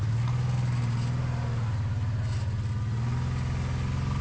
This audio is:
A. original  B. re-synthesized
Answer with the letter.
A